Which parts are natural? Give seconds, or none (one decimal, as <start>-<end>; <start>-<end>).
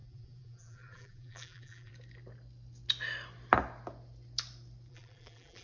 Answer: 1.9-4.9